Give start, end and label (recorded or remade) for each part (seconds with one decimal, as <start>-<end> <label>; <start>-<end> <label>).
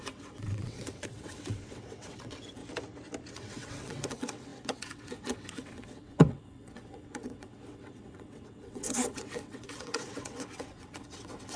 0.0-2.6 remade; 2.6-3.3 recorded; 3.3-11.6 remade